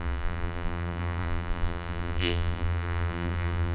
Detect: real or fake fake